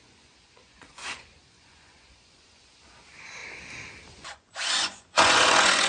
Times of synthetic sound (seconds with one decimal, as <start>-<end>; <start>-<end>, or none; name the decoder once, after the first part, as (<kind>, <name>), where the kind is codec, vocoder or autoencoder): 0.0-3.4 (vocoder, Vocos); 4.1-5.9